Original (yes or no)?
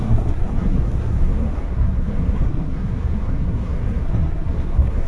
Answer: no